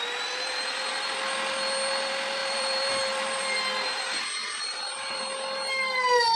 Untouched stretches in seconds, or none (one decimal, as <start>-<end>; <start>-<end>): 0.0-2.4; 3.6-4.4; 5.2-6.4